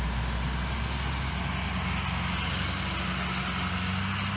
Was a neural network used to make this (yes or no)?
no